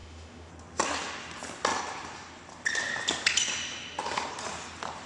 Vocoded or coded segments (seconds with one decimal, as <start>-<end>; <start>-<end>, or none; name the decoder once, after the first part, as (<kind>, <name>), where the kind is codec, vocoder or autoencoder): 0.0-0.5 (autoencoder, DAC-VAE)